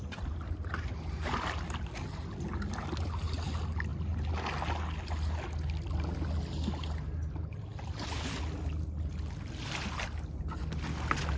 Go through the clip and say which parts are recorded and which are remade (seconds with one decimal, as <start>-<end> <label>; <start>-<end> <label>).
0.0-11.4 recorded